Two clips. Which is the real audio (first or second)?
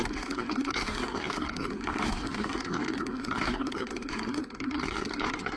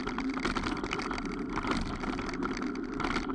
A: second